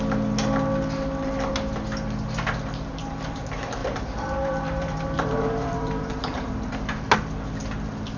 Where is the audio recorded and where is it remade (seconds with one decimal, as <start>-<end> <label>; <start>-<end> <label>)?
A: 0.0-3.8 recorded; 3.8-6.7 remade; 6.7-8.2 recorded